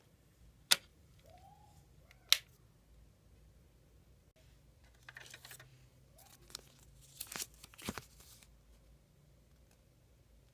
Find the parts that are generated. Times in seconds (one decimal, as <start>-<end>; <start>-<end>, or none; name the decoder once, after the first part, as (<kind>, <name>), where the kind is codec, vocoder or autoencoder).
0.9-1.5 (vocoder, BigVGAN v2); 5.7-6.4; 7.8-8.3